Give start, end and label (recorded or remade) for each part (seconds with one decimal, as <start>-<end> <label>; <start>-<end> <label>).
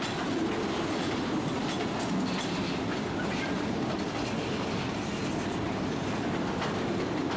0.0-7.4 recorded